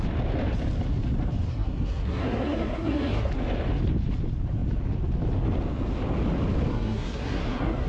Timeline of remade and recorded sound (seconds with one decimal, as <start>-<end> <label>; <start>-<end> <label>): 0.0-1.5 recorded; 1.5-3.3 remade; 3.3-6.7 recorded; 6.7-7.9 remade